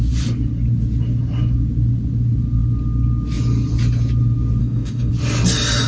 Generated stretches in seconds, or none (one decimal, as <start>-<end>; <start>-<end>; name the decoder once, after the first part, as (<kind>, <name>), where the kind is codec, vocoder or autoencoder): 4.6-5.1 (codec, DAC)